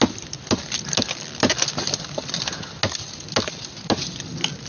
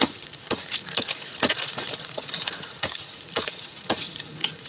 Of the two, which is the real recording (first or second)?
first